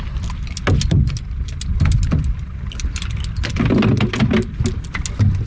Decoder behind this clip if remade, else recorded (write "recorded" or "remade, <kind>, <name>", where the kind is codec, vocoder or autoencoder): recorded